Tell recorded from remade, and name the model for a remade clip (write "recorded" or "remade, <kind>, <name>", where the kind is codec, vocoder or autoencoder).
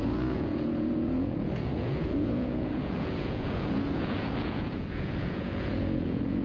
remade, vocoder, Vocos